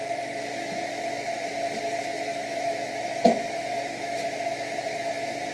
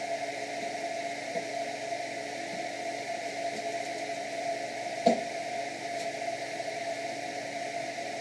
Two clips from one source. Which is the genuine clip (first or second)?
second